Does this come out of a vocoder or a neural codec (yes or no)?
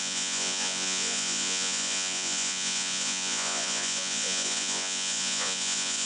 yes